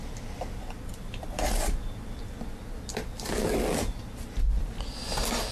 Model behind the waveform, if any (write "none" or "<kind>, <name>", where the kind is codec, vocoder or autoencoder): none